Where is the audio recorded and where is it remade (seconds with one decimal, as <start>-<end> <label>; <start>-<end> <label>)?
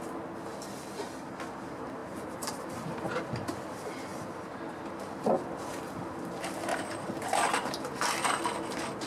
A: 0.0-2.0 recorded; 2.0-3.3 remade; 3.3-6.7 recorded; 6.7-8.4 remade; 8.4-9.1 recorded